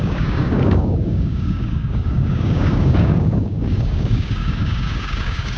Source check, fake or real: fake